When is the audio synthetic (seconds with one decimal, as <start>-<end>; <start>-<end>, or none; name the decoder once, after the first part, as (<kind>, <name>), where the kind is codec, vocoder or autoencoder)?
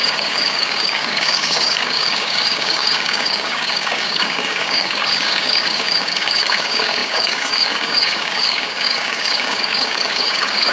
0.0-10.7 (codec, DAC)